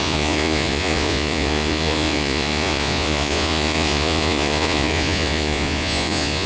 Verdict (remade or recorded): remade